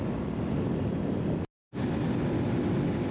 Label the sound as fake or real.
real